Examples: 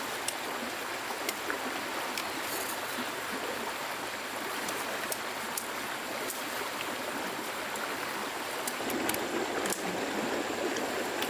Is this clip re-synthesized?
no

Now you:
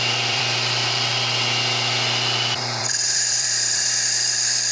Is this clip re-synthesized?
yes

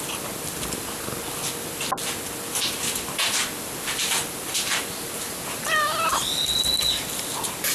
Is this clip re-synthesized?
no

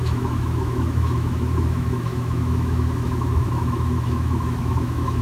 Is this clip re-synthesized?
yes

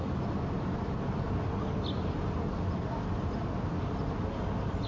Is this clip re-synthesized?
no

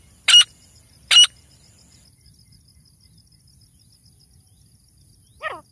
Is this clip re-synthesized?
no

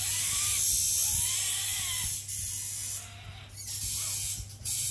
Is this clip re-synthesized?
no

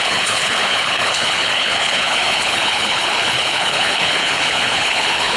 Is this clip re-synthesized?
yes